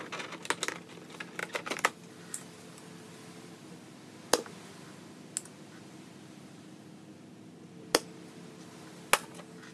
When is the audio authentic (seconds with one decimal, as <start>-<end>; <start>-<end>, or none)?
0.0-1.4; 3.1-9.7